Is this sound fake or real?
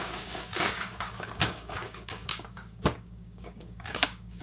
fake